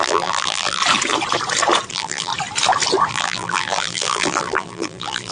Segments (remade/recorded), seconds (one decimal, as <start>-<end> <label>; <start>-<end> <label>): 0.0-0.8 remade; 0.8-1.9 recorded; 1.9-2.3 remade; 2.3-3.1 recorded; 3.1-5.3 remade